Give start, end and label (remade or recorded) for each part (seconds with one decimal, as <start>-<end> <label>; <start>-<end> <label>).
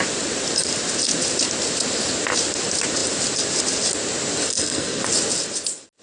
0.0-4.5 recorded; 4.5-5.0 remade; 5.0-6.0 recorded